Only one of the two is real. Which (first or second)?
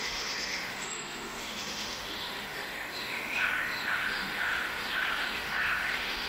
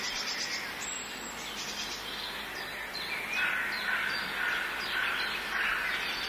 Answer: second